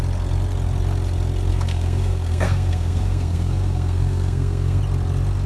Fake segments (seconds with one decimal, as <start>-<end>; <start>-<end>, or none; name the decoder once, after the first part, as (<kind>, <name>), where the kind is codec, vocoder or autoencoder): 1.5-4.8 (codec, SNAC)